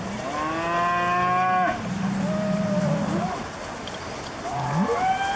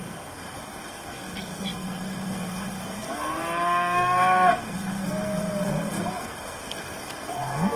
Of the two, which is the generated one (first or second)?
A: second